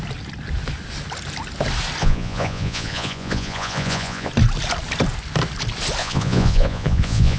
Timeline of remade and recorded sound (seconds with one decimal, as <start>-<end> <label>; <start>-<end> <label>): 0.0-2.0 recorded; 2.0-4.3 remade; 4.3-6.0 recorded; 6.0-7.4 remade